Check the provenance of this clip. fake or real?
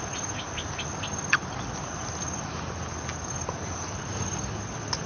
real